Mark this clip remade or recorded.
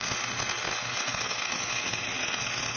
recorded